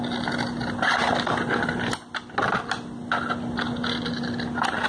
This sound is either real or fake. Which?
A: real